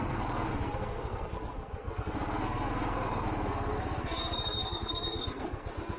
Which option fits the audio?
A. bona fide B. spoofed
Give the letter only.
B